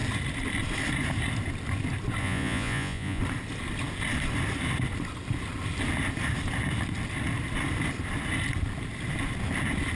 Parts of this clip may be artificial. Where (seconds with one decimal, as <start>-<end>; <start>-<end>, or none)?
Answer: 2.2-3.2